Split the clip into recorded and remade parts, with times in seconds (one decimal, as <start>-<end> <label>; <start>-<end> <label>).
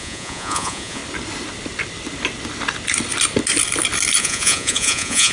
0.0-1.0 remade; 1.0-4.2 recorded; 4.2-5.3 remade